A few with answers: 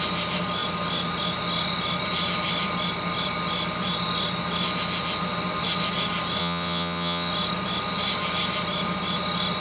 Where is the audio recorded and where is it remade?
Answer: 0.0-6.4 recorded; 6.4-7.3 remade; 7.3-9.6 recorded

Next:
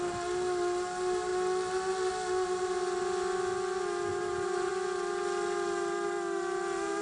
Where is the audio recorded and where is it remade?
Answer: 0.0-4.1 recorded; 4.1-4.7 remade; 4.7-7.0 recorded

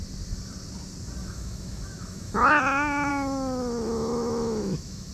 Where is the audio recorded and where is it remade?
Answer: 0.0-1.2 recorded; 1.2-2.6 remade; 2.6-3.1 recorded; 3.1-5.1 remade

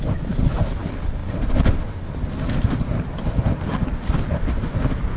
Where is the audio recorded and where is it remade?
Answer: 0.0-5.2 recorded

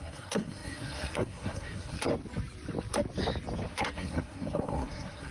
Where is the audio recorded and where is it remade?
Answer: 0.0-2.1 remade; 2.1-3.7 recorded; 3.7-5.3 remade

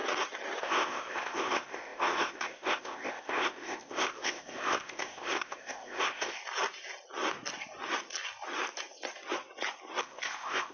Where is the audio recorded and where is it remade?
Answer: 0.0-0.6 recorded; 0.6-6.4 remade; 6.4-10.0 recorded; 10.0-10.7 remade

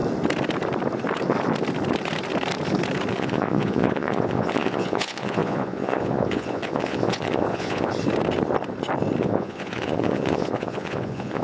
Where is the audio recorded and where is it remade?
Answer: 0.0-3.1 recorded; 3.1-7.9 remade; 7.9-9.2 recorded; 9.2-11.4 remade

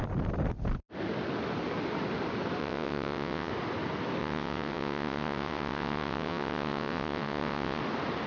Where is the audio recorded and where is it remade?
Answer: 0.0-2.6 recorded; 2.6-3.5 remade; 3.5-4.2 recorded; 4.2-7.8 remade; 7.8-8.3 recorded